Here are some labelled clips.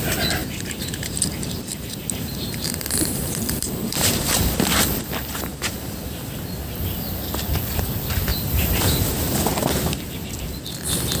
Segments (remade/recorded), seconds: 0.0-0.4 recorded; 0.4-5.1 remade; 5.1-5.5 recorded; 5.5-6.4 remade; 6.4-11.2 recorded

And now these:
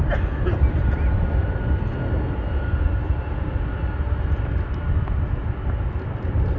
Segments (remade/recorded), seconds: 0.0-6.6 recorded